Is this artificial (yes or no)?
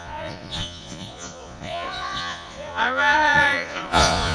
yes